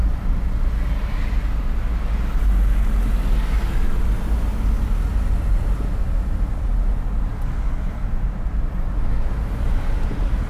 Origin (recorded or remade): recorded